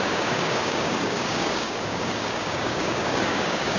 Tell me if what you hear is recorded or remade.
remade